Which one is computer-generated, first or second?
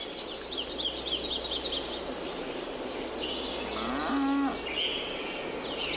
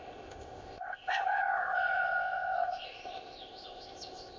second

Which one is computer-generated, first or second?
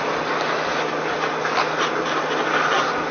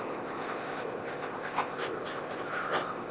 second